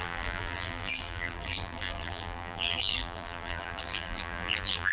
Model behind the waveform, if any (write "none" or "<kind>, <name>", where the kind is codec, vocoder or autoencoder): vocoder, BigVGAN v2